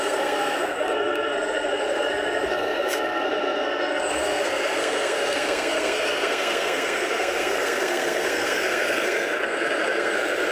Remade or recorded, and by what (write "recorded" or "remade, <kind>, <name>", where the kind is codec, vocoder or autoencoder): remade, codec, SNAC